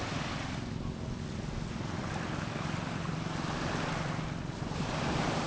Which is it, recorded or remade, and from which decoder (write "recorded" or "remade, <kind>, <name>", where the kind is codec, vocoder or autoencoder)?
recorded